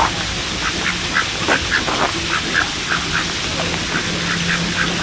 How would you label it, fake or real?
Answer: real